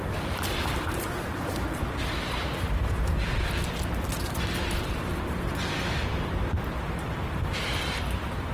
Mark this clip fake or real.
real